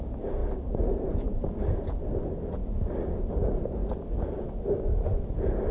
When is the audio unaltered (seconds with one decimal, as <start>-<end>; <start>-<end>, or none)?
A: 0.0-5.7

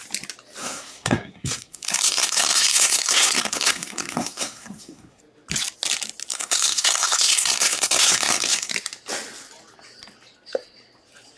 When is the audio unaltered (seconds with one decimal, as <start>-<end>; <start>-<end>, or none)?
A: 0.0-0.6; 5.2-6.3; 8.7-11.4